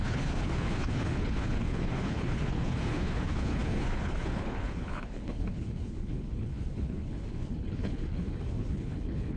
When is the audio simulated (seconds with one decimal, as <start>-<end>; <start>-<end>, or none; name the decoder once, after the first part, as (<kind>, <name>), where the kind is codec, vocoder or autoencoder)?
0.0-9.4 (codec, HILCodec)